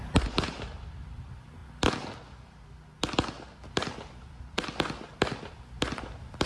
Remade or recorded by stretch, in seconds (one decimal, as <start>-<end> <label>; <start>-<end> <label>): 0.0-6.5 recorded